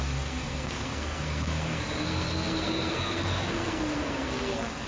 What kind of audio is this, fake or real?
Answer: fake